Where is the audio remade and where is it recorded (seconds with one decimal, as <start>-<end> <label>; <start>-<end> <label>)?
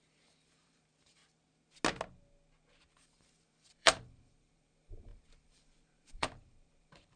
0.0-1.2 remade; 1.2-2.9 recorded; 2.9-7.2 remade